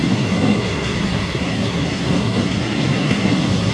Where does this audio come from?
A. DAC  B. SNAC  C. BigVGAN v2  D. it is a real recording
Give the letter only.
B